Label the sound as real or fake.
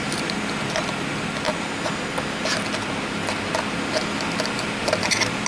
real